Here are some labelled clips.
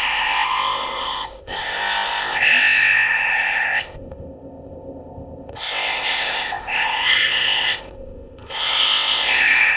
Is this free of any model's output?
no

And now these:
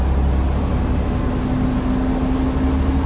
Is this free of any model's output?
yes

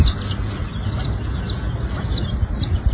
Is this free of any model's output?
yes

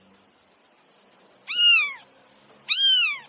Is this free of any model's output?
yes